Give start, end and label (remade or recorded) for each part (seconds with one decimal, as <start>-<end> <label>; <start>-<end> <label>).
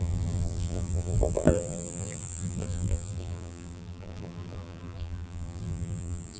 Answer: 0.0-6.4 remade